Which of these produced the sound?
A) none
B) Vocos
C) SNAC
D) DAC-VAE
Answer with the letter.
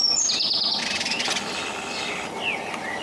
A